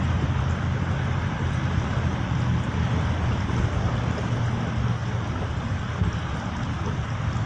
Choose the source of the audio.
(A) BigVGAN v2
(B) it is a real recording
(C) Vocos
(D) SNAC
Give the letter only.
B